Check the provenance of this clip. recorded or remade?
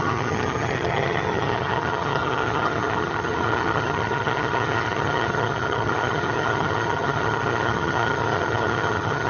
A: remade